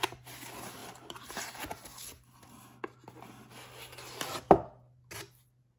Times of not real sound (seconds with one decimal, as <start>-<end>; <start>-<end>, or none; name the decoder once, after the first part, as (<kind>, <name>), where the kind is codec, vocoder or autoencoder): none